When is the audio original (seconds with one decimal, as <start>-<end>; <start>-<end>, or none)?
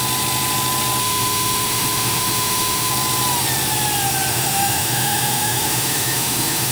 0.0-1.0; 2.9-4.3